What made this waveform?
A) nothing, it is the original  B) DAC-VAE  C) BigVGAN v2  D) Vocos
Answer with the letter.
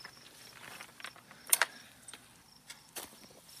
C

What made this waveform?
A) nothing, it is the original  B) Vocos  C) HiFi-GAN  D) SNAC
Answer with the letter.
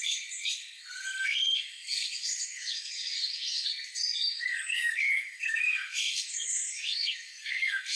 D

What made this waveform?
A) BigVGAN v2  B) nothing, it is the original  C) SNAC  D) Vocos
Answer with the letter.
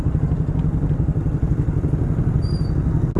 B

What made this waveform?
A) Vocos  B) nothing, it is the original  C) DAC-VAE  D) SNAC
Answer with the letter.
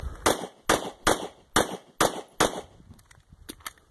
B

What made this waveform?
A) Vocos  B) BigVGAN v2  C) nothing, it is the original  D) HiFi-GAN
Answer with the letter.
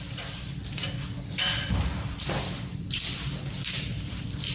B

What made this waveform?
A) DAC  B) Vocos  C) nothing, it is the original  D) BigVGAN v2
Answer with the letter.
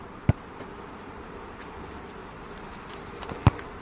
C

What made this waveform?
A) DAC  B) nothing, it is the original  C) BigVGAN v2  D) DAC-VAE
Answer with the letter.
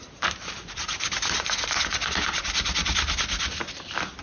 B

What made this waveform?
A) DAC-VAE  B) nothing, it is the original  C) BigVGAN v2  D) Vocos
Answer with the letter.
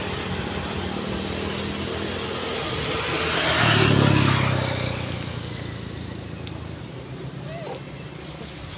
B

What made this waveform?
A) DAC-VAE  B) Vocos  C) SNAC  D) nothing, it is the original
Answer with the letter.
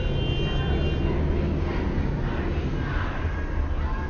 D